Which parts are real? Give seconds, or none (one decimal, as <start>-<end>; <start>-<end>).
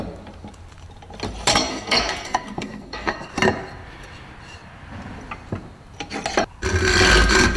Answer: 0.0-1.5; 3.3-7.6